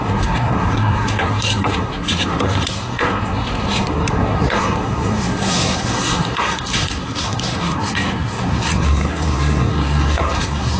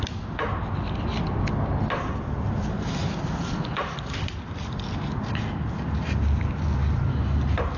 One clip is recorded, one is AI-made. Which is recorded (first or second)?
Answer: second